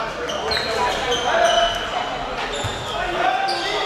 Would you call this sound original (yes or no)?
yes